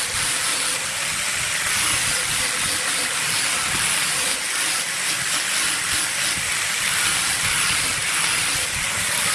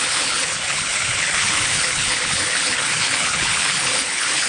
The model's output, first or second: second